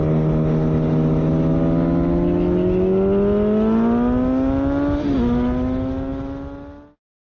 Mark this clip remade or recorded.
recorded